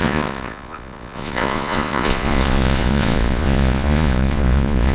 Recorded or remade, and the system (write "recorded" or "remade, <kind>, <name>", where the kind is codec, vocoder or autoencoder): remade, vocoder, Vocos